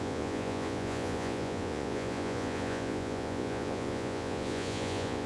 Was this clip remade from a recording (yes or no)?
yes